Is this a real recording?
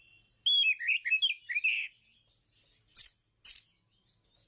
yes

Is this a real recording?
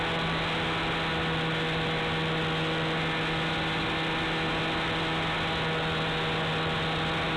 yes